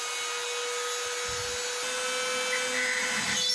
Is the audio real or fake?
real